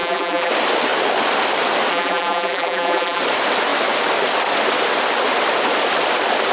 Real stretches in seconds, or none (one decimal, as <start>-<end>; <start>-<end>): 0.5-1.9; 3.2-6.5